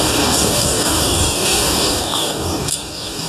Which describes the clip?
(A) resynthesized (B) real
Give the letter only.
A